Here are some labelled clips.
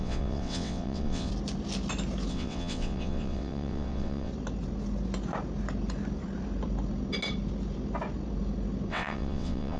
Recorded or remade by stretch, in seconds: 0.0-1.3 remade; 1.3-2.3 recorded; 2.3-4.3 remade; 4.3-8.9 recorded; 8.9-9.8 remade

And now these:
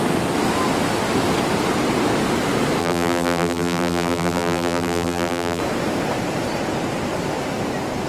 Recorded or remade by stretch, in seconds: 0.0-2.8 recorded; 2.8-5.6 remade; 5.6-8.1 recorded

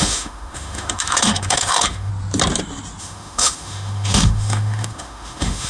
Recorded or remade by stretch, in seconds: 0.0-2.1 remade; 2.1-3.0 recorded; 3.0-5.7 remade

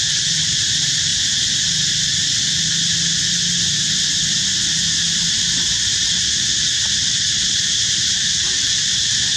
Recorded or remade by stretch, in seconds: 0.0-1.1 remade; 1.1-5.3 recorded; 5.3-6.0 remade; 6.0-6.9 recorded; 6.9-9.4 remade

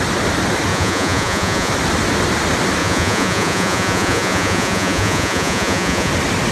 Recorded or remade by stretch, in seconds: 0.0-0.7 recorded; 0.7-1.7 remade; 1.7-2.8 recorded; 2.8-6.1 remade; 6.1-6.5 recorded

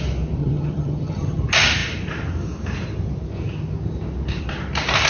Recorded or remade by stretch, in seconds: 0.0-0.4 recorded; 0.4-1.4 remade; 1.4-5.1 recorded